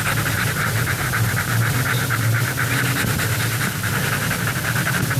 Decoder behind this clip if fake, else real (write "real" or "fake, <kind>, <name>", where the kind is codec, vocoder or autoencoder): real